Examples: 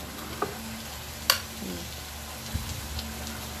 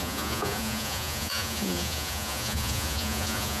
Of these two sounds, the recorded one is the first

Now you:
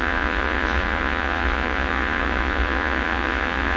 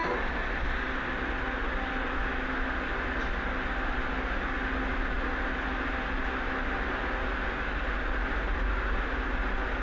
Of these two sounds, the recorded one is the second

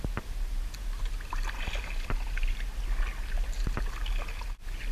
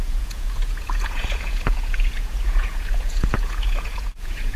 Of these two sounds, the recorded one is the first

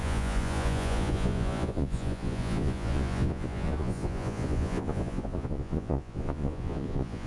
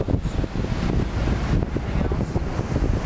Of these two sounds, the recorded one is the second